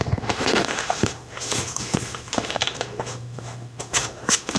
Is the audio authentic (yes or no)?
no